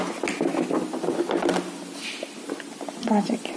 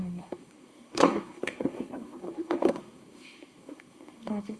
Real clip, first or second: first